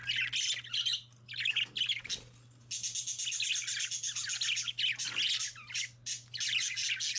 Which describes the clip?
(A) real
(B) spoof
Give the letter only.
A